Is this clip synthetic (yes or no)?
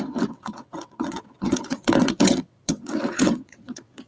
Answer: yes